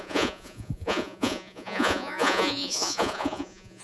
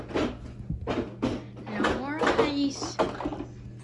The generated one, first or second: first